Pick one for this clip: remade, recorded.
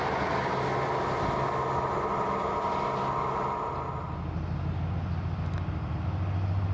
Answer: recorded